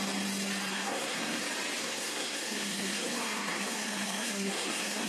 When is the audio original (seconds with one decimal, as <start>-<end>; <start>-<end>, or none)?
0.0-0.7; 1.4-1.8